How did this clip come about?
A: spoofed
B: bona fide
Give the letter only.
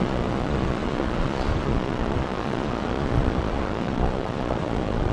A